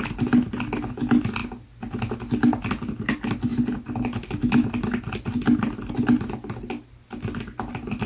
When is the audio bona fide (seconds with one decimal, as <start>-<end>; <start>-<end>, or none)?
0.0-8.1